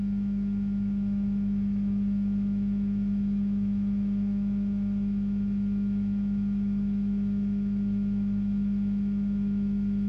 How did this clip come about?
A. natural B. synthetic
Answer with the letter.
B